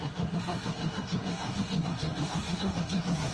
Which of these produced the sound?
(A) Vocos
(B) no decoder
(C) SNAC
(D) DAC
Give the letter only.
C